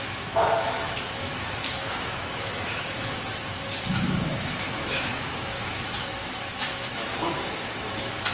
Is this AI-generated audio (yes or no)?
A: yes